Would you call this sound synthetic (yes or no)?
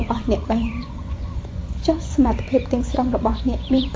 yes